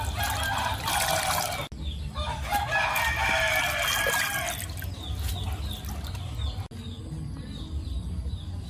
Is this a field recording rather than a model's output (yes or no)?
yes